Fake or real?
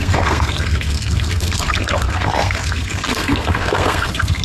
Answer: fake